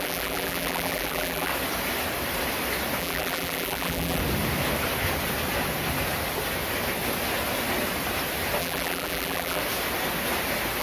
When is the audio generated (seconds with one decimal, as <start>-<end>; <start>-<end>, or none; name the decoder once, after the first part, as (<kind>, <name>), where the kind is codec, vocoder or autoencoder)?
0.0-1.5 (vocoder, BigVGAN v2); 3.0-4.2; 8.6-9.6